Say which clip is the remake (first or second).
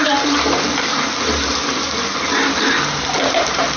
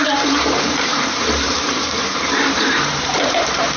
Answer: second